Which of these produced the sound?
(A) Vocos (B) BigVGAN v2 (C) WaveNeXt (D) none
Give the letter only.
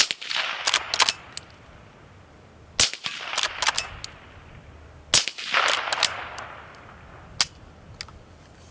D